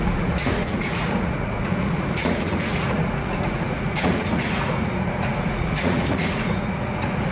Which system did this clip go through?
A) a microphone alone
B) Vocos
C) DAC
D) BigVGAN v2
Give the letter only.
B